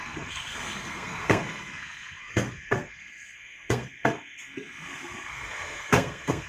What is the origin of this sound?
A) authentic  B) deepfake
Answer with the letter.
B